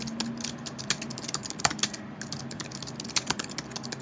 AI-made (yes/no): no